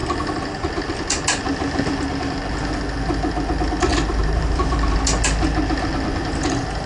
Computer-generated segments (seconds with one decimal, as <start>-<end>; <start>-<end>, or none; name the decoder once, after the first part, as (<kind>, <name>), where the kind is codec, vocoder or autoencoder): 3.9-4.9 (vocoder, BigVGAN v2); 6.2-6.9